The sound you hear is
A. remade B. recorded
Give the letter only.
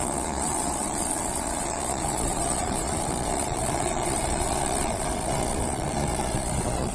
A